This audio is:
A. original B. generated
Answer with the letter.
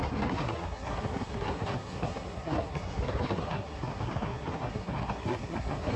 B